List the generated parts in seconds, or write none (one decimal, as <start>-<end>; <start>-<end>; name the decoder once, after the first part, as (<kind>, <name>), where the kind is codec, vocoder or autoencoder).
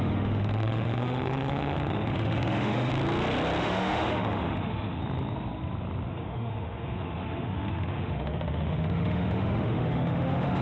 0.0-2.9 (autoencoder, DAC-VAE); 3.6-5.0; 6.1-10.6